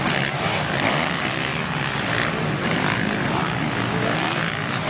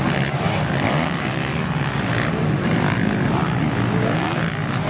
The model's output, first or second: first